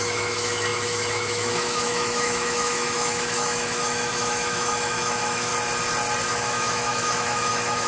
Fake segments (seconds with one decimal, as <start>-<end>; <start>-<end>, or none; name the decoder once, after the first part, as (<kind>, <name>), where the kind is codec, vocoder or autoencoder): 0.0-5.5 (autoencoder, DAC-VAE); 6.3-7.9